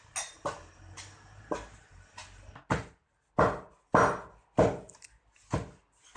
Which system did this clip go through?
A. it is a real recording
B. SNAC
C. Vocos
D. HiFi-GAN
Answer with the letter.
A